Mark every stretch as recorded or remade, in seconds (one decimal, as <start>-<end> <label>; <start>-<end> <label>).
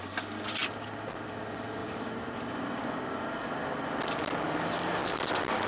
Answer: 0.0-1.8 recorded; 1.8-2.8 remade; 2.8-5.7 recorded